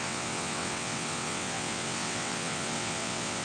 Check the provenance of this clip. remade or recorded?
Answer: remade